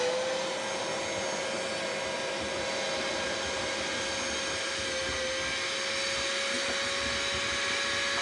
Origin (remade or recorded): recorded